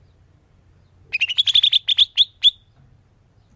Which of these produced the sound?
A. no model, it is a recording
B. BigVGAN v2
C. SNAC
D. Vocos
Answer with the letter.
A